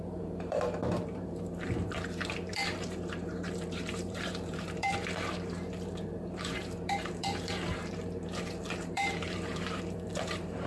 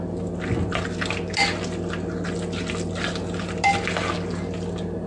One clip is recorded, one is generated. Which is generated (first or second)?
first